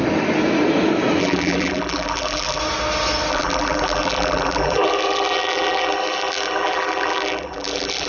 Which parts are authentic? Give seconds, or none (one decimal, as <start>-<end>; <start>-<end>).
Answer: 0.0-1.2; 2.6-3.3